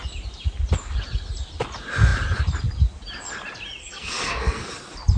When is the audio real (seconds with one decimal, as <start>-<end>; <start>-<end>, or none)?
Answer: 0.0-3.8; 4.7-5.2